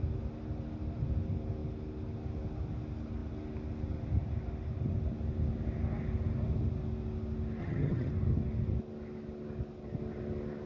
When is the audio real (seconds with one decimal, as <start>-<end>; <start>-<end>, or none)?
0.0-7.6; 8.1-10.7